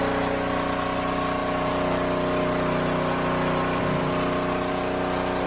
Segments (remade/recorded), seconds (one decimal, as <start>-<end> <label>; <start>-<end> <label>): 0.0-5.5 recorded